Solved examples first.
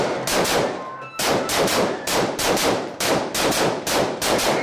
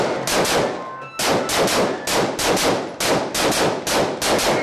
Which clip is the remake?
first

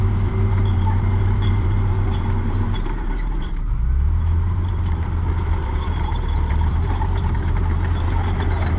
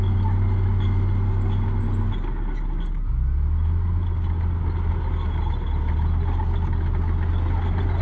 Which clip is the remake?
first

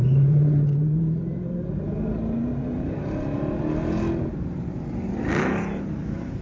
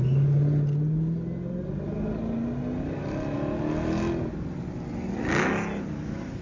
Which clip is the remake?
first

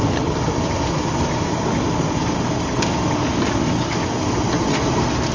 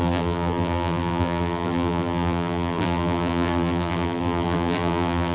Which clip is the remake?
second